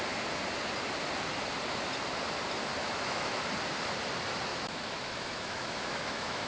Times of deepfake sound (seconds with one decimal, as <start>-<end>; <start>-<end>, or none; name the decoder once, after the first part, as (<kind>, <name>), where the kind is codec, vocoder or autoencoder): 2.8-3.4 (autoencoder, DAC-VAE); 4.5-6.5